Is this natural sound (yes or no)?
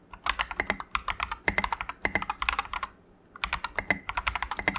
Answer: yes